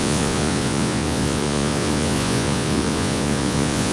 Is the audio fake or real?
fake